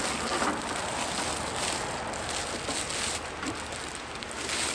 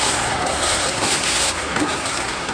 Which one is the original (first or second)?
first